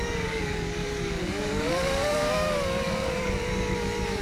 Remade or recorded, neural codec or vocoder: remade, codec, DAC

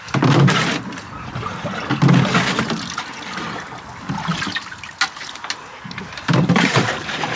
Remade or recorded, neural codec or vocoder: recorded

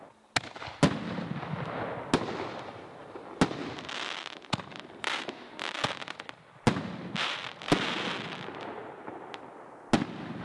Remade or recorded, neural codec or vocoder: recorded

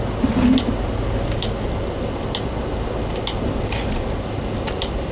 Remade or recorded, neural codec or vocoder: recorded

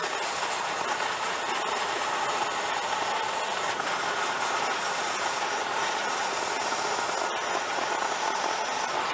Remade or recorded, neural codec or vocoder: recorded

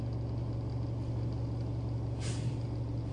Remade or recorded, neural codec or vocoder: recorded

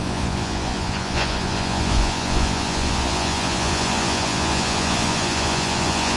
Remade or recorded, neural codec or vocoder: remade, vocoder, Vocos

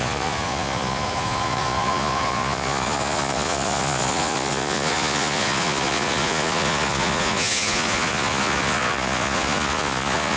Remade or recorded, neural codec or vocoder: remade, vocoder, Vocos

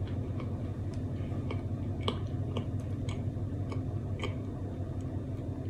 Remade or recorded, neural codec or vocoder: recorded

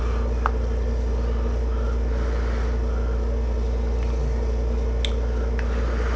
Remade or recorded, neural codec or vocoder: recorded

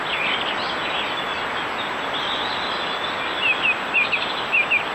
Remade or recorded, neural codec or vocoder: recorded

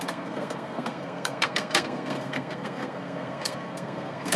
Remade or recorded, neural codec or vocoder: remade, codec, SNAC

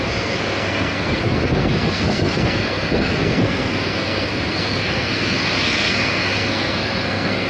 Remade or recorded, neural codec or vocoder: remade, codec, SNAC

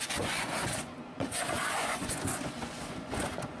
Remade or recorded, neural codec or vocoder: remade, vocoder, Vocos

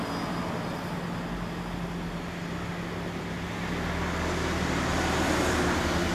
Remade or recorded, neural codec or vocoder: recorded